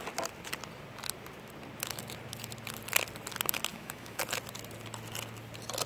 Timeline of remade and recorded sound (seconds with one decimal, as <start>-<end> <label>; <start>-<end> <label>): 0.0-3.7 recorded; 3.7-4.2 remade; 4.2-5.9 recorded